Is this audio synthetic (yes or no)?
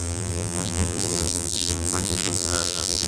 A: yes